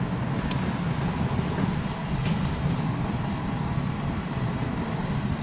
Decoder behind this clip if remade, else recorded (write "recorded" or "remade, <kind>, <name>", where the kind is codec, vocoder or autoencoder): recorded